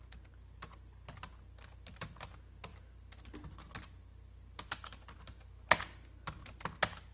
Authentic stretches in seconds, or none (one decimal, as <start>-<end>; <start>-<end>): 0.0-7.1